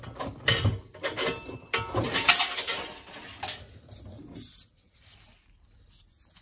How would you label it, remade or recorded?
recorded